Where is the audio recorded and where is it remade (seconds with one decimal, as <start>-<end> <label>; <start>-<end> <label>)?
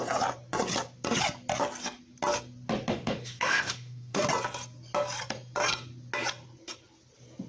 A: 0.0-2.9 recorded; 2.9-4.2 remade; 4.2-7.5 recorded